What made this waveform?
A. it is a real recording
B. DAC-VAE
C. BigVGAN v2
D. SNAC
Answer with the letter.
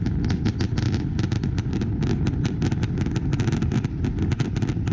A